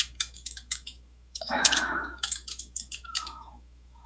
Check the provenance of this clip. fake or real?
fake